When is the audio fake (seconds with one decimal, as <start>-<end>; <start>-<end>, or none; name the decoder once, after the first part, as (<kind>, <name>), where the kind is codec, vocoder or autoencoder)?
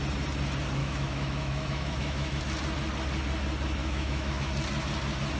0.8-2.4 (autoencoder, DAC-VAE); 3.8-4.5